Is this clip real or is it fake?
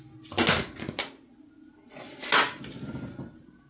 real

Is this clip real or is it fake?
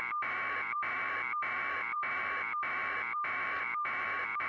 fake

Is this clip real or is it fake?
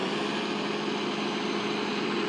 real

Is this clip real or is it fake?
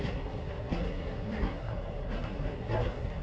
fake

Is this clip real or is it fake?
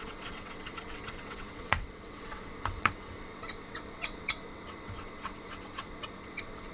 fake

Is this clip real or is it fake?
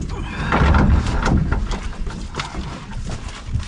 real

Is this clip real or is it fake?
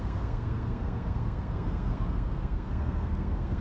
fake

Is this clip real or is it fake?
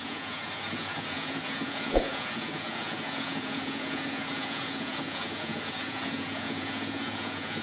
fake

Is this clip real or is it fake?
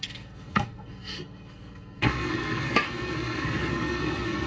fake